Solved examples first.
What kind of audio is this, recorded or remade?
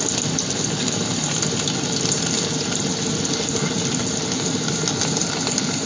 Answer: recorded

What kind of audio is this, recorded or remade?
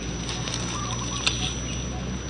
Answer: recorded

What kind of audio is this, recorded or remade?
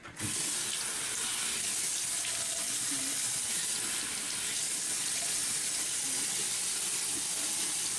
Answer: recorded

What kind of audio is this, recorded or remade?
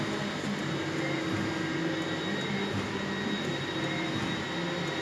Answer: recorded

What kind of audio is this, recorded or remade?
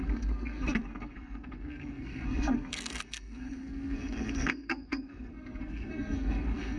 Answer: remade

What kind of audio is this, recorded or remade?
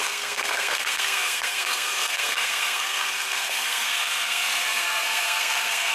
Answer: remade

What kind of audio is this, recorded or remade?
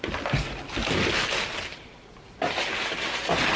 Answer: recorded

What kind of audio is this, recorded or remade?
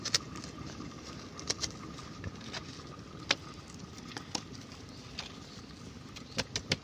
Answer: recorded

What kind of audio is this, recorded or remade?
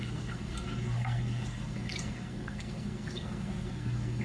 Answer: remade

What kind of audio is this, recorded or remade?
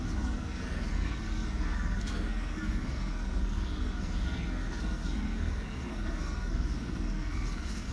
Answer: remade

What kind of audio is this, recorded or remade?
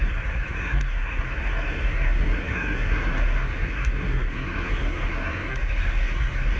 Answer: remade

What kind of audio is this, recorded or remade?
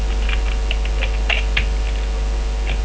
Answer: recorded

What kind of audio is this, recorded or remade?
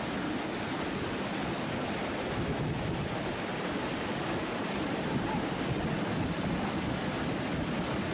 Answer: recorded